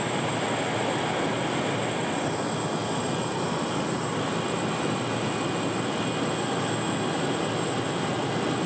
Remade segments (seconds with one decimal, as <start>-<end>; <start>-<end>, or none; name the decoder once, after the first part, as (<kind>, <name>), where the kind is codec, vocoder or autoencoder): none